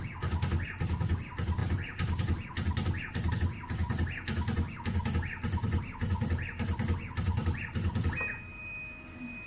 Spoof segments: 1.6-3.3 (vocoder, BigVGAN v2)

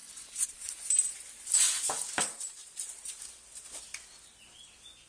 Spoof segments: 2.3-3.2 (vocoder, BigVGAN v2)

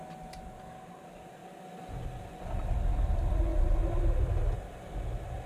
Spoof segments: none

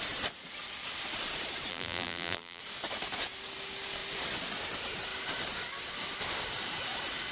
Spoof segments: 1.7-2.6 (vocoder, BigVGAN v2)

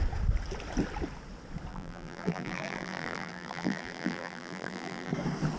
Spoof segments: 1.7-5.1 (vocoder, BigVGAN v2)

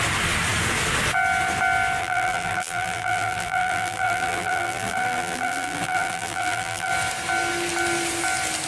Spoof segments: 2.0-6.9 (vocoder, BigVGAN v2)

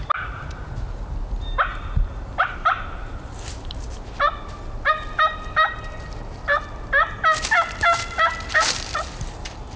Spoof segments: 1.7-2.5 (vocoder, BigVGAN v2)